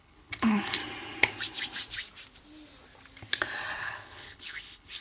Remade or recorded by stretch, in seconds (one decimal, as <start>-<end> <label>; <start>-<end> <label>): 0.0-0.8 remade; 0.8-3.8 recorded; 3.8-5.0 remade